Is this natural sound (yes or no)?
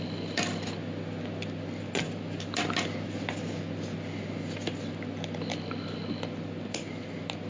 yes